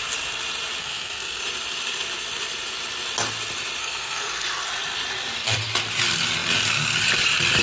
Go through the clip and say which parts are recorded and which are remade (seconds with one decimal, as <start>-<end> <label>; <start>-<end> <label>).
0.0-0.8 recorded; 0.8-1.4 remade; 1.4-3.8 recorded; 3.8-4.7 remade; 4.7-7.6 recorded